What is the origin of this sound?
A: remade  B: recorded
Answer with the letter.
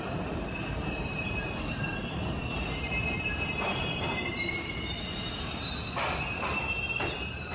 A